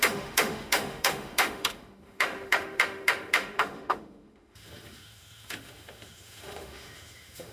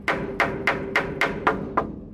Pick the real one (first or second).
second